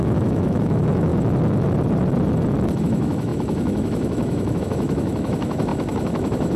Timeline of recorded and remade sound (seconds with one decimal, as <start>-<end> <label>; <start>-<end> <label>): 0.0-1.1 remade; 1.1-2.8 recorded; 2.8-6.6 remade